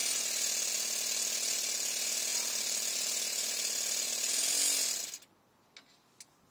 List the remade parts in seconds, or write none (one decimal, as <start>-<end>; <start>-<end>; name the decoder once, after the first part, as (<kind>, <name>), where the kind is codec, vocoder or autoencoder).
none

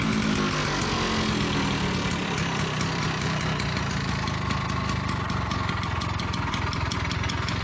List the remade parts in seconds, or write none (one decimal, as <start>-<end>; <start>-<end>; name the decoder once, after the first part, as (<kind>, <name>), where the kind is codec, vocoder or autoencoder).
2.2-3.5 (vocoder, BigVGAN v2)

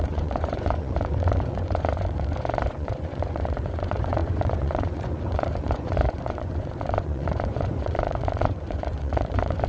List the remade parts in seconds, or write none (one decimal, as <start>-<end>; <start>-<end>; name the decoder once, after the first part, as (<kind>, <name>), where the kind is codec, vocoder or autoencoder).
0.0-9.7 (vocoder, Vocos)

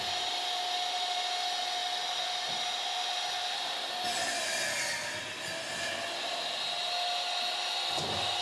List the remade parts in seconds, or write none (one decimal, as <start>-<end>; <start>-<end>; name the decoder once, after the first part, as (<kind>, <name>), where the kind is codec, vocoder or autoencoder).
none

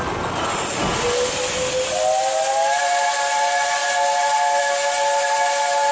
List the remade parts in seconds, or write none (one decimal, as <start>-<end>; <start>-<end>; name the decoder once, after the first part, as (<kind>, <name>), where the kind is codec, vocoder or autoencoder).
none